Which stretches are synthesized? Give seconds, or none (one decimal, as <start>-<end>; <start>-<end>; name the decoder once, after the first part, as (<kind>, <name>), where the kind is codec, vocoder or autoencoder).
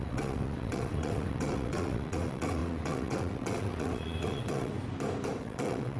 0.0-4.7 (vocoder, WaveNeXt); 5.4-6.0